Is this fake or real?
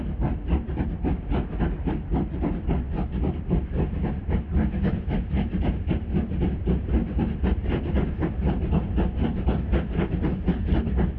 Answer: real